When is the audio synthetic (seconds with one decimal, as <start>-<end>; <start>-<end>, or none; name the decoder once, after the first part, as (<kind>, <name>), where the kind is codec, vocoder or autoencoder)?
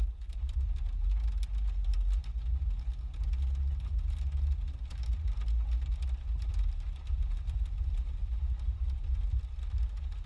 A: none